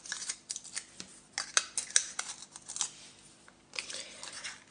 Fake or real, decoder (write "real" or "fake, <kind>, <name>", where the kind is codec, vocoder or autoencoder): real